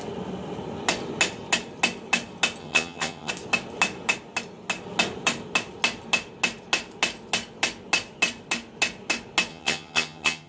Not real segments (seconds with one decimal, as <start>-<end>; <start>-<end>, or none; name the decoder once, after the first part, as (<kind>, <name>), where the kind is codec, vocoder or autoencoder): 2.6-3.3 (vocoder, HiFi-GAN); 9.5-10.5